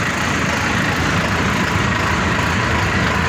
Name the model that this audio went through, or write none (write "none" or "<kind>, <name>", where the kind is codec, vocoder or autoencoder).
none